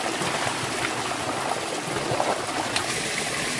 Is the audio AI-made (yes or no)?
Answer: no